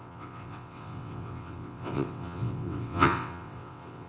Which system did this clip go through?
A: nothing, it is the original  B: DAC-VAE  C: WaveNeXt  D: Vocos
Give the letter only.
C